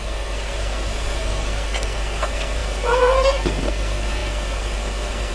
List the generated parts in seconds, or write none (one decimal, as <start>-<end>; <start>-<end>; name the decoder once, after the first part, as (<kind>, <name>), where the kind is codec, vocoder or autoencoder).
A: 0.0-5.3 (codec, SNAC)